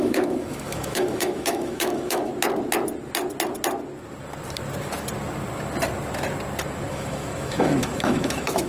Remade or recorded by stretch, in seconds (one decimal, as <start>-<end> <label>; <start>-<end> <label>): 0.0-2.3 remade; 2.3-6.9 recorded; 6.9-8.7 remade